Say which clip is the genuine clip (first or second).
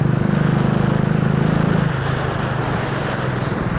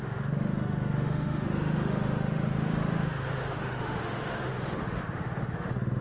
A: first